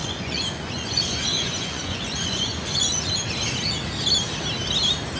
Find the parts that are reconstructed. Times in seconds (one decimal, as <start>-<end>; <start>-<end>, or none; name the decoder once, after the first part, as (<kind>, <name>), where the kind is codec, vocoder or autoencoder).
0.0-3.1 (vocoder, Vocos)